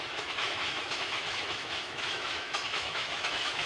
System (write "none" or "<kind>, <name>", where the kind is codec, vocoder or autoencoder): autoencoder, DAC-VAE